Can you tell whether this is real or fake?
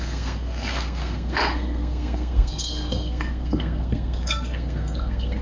fake